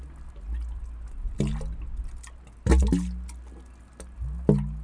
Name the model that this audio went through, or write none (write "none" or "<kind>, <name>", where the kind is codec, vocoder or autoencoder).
none